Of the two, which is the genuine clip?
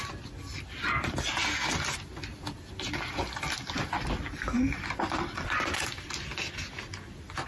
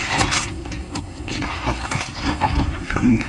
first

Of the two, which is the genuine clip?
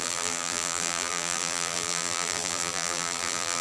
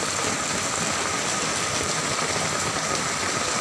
second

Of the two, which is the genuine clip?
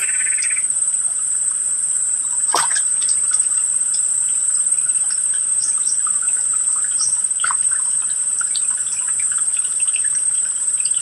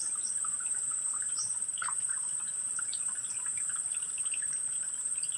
second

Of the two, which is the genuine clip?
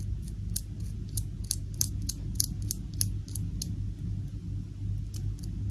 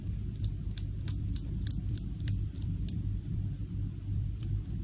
first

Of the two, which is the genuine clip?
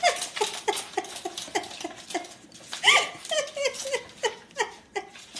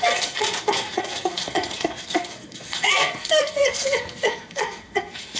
first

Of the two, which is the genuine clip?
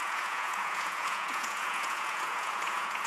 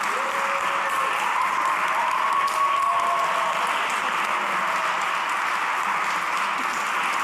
second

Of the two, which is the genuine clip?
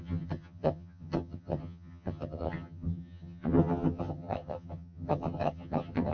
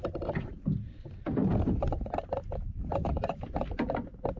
second